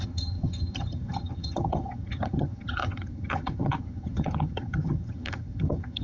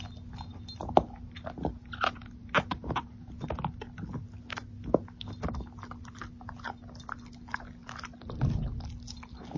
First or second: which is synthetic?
first